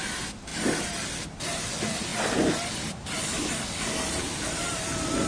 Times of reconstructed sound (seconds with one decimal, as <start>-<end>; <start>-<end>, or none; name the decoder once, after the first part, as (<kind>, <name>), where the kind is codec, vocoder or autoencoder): 0.5-1.7 (vocoder, BigVGAN v2); 2.1-4.0